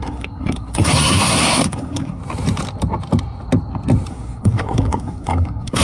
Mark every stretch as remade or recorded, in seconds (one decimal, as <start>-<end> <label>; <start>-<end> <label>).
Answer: 0.0-2.2 remade; 2.2-4.1 recorded; 4.1-5.8 remade